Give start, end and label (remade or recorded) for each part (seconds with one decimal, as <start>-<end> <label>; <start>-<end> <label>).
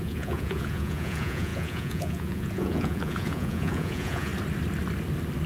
0.0-4.3 remade; 4.3-5.5 recorded